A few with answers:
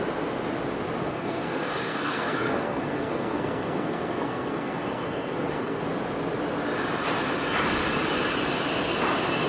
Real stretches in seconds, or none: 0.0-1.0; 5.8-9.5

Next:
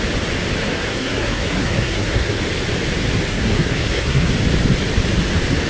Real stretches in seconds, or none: 0.0-0.6; 2.4-3.3; 4.3-5.7

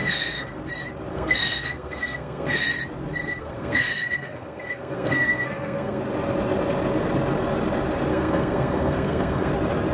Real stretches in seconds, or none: 0.6-1.1; 2.6-3.2; 6.0-8.1; 9.5-9.9

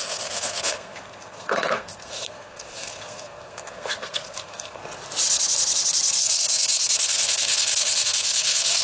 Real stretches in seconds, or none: 4.8-6.2

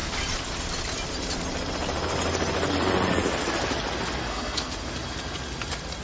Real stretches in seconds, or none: 0.0-4.2; 4.7-6.0

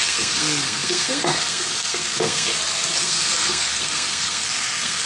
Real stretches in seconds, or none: 2.5-3.0

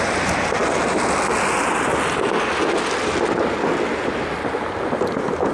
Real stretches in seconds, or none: 0.0-5.5

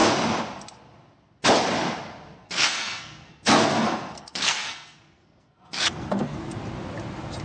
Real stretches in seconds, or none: 0.0-2.4; 6.6-7.4